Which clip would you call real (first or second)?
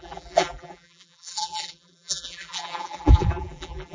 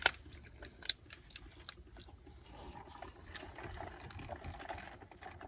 second